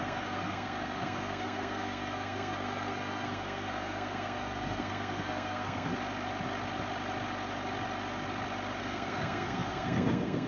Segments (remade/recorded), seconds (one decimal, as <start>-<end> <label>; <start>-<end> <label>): 0.0-5.9 remade; 5.9-8.8 recorded; 8.8-10.5 remade